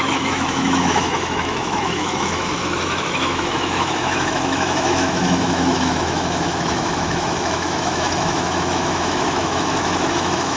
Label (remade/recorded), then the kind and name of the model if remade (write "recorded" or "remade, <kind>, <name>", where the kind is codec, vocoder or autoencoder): remade, autoencoder, DAC-VAE